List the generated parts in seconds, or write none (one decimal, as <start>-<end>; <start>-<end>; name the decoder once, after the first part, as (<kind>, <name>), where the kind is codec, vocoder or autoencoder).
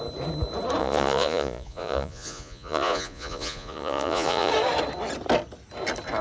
0.8-4.5 (vocoder, Vocos)